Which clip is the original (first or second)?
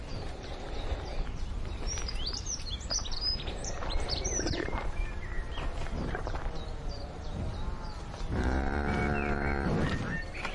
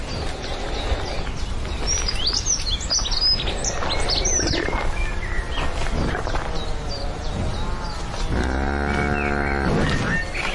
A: second